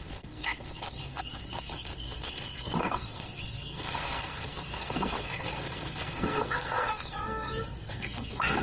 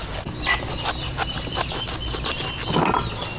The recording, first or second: second